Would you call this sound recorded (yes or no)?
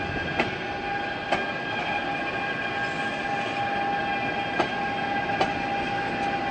yes